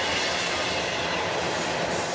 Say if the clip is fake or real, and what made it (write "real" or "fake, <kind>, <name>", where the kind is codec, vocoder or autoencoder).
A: real